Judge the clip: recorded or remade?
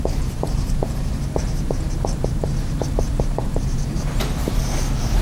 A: remade